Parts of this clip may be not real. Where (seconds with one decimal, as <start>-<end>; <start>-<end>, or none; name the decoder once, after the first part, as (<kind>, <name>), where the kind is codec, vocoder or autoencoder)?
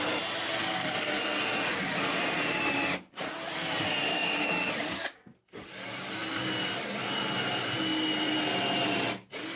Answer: 0.6-1.2 (codec, DAC); 4.1-4.7